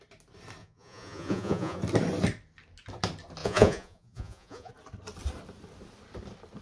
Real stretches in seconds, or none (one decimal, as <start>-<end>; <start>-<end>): 0.0-0.6; 1.8-3.4; 4.7-6.6